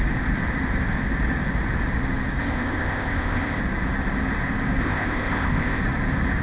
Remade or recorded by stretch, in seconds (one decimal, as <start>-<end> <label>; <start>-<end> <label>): 0.0-2.4 recorded; 2.4-3.6 remade; 3.6-4.8 recorded; 4.8-5.8 remade; 5.8-6.4 recorded